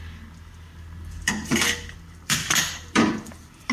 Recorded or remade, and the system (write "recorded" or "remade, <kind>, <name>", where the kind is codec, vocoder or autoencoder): remade, vocoder, BigVGAN v2